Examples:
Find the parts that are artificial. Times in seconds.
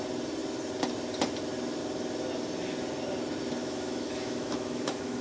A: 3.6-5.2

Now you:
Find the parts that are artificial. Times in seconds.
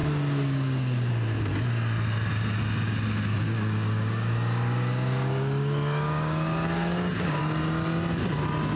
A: 0.0-1.1; 3.3-7.4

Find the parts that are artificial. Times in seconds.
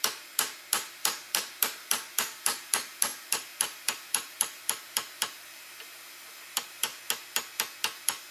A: 0.0-6.9